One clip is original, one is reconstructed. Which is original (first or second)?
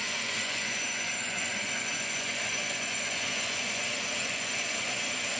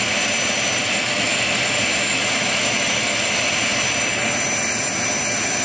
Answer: second